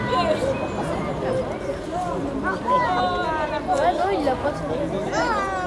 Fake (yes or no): no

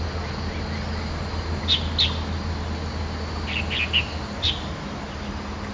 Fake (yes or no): no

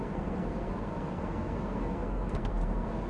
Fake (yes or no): yes